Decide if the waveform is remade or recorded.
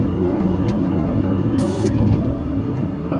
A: remade